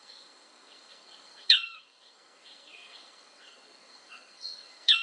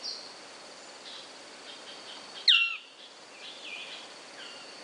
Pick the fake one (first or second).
first